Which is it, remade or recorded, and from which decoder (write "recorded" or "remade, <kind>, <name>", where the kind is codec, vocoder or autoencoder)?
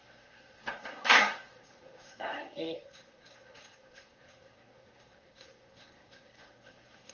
remade, codec, SNAC